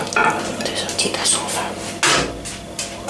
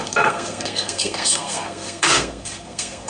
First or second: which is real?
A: first